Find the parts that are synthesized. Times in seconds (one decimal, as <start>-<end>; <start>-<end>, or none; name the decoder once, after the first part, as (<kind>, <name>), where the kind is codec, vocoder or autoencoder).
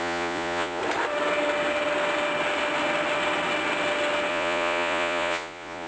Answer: 0.0-0.8 (vocoder, Vocos); 4.3-5.9